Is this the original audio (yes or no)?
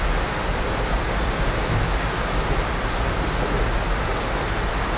yes